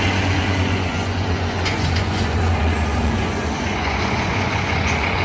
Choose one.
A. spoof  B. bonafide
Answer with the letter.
A